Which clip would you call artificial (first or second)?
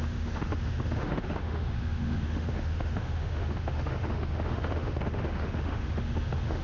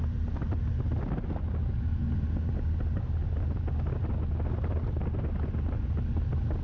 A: first